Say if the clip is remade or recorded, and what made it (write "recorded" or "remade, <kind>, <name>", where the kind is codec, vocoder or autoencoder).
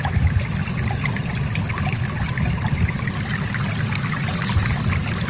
recorded